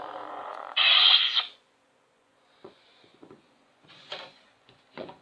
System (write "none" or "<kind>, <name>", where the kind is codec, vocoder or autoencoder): vocoder, Vocos